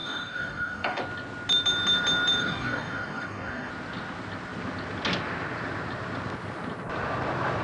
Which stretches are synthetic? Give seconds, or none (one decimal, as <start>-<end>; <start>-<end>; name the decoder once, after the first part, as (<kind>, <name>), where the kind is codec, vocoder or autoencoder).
0.0-1.0 (codec, DAC); 2.4-3.7

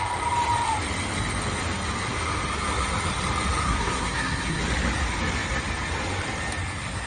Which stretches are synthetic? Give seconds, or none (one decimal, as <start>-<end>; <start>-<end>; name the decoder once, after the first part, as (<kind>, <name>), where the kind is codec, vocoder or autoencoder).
3.6-4.6 (codec, SNAC)

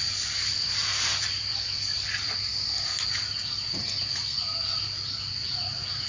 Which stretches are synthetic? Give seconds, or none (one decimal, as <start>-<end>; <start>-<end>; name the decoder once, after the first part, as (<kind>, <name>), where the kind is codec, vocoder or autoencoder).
none

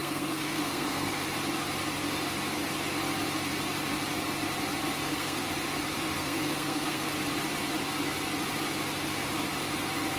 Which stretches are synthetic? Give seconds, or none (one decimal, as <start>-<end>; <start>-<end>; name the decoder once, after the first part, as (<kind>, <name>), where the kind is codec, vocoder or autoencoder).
0.0-1.2 (codec, SNAC); 5.0-5.5; 6.2-7.1